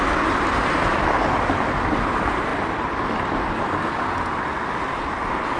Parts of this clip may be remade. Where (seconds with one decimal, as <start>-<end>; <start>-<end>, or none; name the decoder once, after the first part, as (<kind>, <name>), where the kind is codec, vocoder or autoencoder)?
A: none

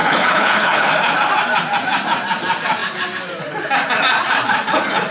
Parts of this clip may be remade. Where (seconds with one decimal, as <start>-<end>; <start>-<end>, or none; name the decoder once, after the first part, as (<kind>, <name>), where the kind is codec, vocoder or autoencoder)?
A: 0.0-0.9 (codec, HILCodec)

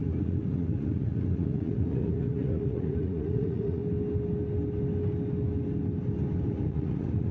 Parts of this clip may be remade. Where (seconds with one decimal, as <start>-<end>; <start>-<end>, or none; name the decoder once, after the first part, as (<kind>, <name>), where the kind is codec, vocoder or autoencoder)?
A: 0.0-3.8 (vocoder, Vocos); 6.5-7.3

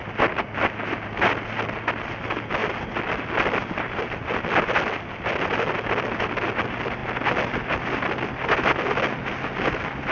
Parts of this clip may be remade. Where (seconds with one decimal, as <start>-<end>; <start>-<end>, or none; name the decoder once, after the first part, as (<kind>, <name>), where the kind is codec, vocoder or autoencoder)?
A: none

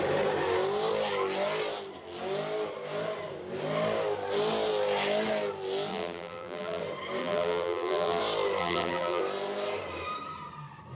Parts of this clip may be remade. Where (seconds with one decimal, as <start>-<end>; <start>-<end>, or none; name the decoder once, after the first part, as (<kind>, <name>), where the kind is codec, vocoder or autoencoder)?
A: 5.9-6.8 (vocoder, BigVGAN v2); 7.2-8.2; 8.6-9.2

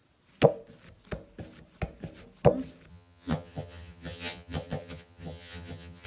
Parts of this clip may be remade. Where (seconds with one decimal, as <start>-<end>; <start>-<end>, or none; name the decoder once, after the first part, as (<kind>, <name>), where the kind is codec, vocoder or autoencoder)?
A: 2.9-6.1 (vocoder, HiFi-GAN)